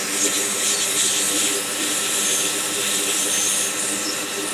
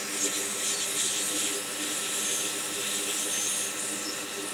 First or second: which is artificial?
first